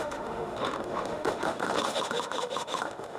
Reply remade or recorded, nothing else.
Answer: remade